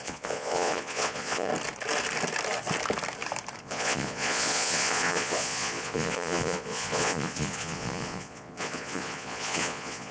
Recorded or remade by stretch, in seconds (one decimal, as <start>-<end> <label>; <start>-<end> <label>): 0.0-1.5 remade; 1.5-3.6 recorded; 3.6-10.1 remade